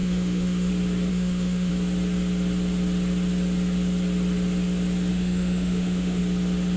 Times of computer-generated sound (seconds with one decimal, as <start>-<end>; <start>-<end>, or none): 0.0-0.7; 1.1-1.7; 5.1-6.2

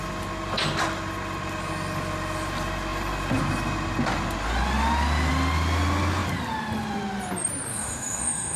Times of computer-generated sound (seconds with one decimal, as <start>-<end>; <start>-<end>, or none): 7.7-8.6

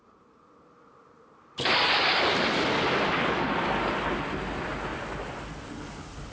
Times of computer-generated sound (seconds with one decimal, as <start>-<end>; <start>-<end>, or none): none

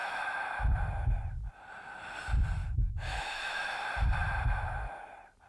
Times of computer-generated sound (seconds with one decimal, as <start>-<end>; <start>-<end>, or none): 0.0-0.6; 2.6-3.7

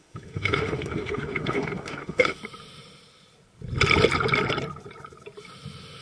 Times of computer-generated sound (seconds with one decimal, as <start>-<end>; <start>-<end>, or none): 0.0-2.4

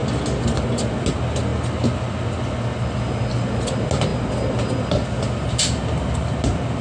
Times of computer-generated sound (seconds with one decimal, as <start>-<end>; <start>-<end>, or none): none

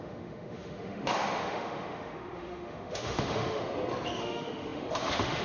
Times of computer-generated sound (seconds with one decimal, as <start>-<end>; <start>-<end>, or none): 0.0-3.6; 4.2-5.4

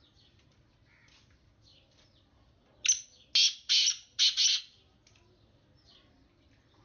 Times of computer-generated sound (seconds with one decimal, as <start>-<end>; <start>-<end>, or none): none